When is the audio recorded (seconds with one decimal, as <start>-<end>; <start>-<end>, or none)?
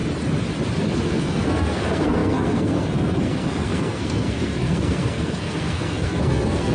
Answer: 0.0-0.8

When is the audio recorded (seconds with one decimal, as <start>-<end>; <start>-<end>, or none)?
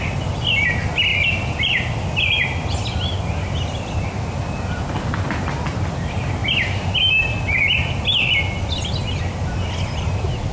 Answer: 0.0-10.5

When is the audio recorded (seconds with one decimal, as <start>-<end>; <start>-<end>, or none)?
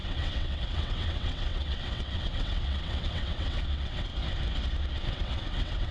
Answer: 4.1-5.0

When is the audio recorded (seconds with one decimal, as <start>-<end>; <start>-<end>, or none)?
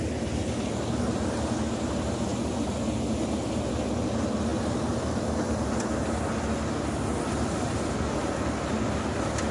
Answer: 0.0-9.5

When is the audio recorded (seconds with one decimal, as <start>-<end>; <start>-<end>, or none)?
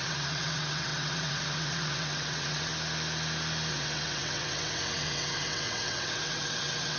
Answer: 2.7-3.7